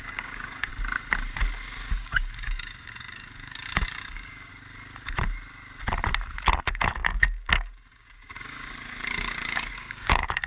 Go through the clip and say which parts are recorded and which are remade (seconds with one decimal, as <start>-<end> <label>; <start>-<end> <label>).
0.0-0.7 remade; 0.7-1.9 recorded; 1.9-4.5 remade; 4.5-6.7 recorded; 6.7-10.5 remade